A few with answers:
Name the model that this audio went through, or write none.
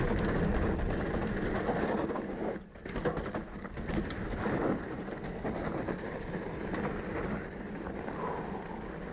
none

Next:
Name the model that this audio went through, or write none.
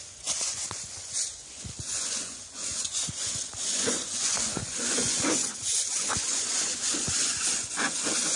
vocoder, Vocos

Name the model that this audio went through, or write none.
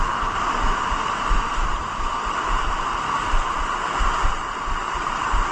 none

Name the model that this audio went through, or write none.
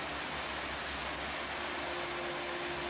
none